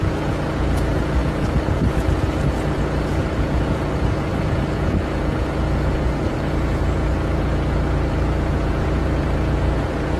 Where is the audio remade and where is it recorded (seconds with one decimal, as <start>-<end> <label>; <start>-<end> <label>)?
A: 0.0-10.2 remade